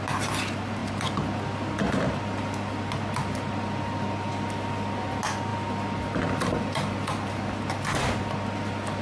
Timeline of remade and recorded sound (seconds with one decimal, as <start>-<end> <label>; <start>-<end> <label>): 0.0-9.0 recorded